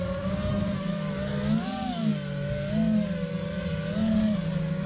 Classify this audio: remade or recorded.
remade